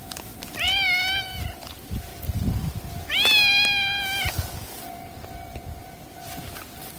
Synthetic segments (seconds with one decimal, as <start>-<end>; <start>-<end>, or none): 5.8-6.6